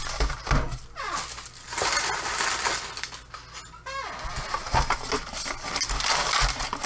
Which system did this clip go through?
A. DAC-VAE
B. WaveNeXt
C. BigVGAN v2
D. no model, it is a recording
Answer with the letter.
D